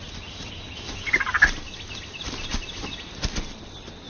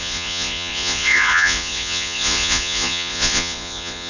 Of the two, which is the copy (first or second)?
second